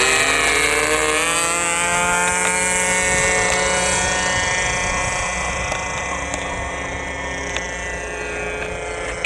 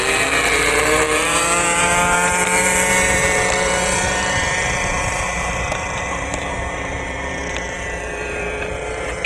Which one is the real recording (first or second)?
first